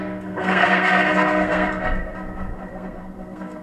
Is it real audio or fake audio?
fake